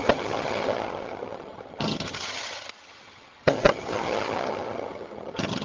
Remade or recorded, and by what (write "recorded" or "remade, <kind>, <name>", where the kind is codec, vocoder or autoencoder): remade, vocoder, HiFi-GAN